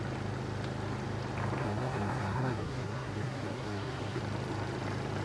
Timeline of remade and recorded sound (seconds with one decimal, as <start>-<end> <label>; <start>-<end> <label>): 0.0-1.6 recorded; 1.6-4.2 remade; 4.2-5.2 recorded